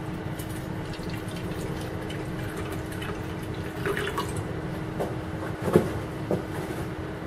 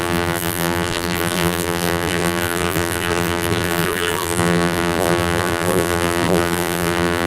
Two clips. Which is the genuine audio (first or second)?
first